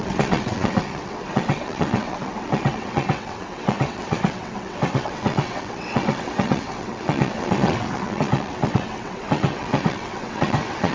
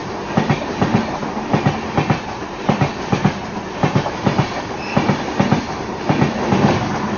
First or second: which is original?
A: second